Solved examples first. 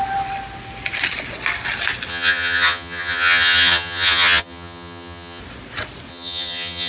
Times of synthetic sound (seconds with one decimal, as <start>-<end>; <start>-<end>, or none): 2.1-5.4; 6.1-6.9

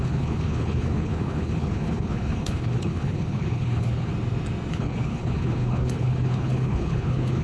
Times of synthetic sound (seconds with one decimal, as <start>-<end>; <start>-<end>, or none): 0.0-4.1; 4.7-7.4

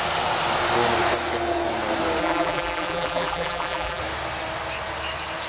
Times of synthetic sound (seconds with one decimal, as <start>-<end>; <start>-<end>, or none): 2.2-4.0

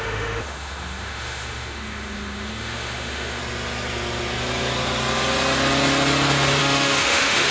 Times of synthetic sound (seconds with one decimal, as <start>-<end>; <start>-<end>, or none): 0.0-3.4; 6.6-7.5

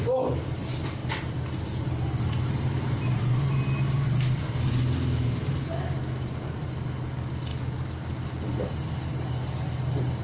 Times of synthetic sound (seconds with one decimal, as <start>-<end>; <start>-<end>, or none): none

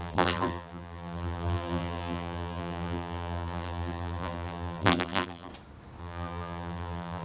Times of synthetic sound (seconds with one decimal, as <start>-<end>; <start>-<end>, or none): 0.0-5.5; 6.0-7.2